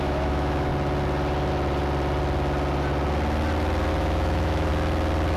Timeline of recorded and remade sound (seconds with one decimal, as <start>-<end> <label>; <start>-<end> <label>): 0.0-0.7 remade; 0.7-3.9 recorded; 3.9-4.7 remade; 4.7-5.4 recorded